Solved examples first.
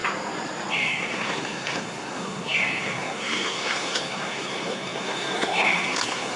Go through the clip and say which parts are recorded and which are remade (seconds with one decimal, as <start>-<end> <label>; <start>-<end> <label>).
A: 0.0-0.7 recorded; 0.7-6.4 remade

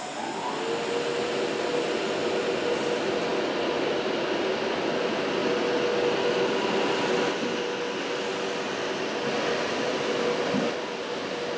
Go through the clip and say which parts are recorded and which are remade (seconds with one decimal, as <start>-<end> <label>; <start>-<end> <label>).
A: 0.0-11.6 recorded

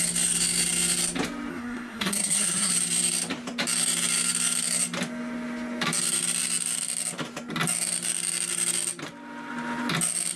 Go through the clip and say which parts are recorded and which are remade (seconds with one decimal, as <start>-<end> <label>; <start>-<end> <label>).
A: 0.0-1.5 recorded; 1.5-2.7 remade; 2.7-10.4 recorded